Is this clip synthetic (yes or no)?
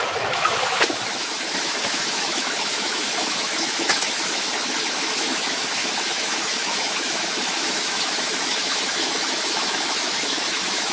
yes